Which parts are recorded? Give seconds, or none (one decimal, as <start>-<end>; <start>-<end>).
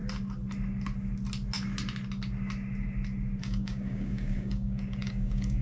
0.0-3.4